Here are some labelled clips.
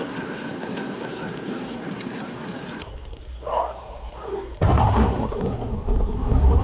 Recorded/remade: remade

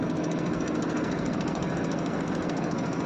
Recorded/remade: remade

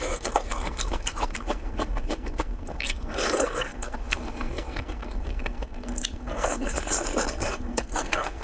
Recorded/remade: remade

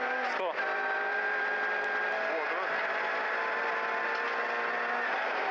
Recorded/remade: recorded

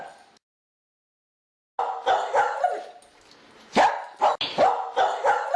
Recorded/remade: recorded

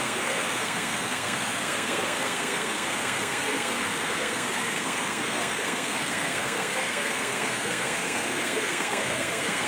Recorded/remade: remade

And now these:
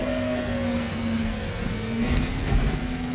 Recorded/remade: remade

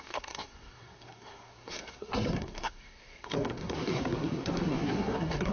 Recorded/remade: remade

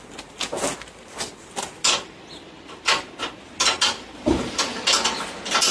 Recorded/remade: recorded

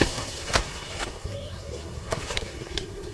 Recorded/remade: remade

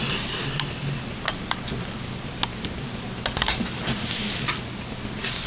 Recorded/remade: recorded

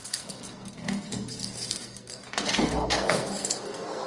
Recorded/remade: remade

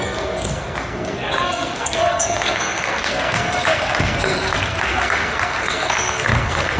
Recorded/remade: remade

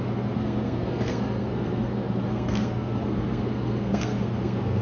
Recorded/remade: remade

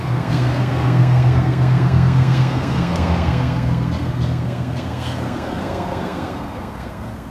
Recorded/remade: remade